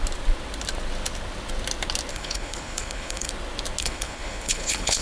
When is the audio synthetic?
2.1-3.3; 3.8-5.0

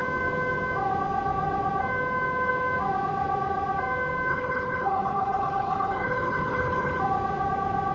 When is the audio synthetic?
4.3-7.0

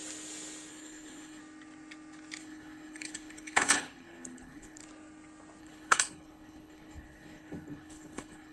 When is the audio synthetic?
0.7-1.4; 2.4-4.8; 5.6-8.5